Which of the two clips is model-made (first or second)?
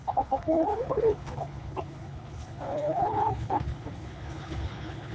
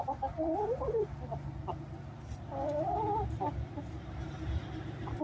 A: first